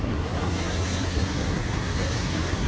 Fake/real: fake